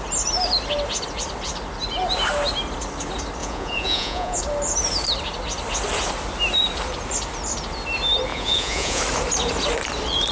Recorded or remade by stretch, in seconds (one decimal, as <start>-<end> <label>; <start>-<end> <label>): 0.0-3.4 recorded; 3.4-4.4 remade; 4.4-8.3 recorded; 8.3-9.0 remade; 9.0-10.3 recorded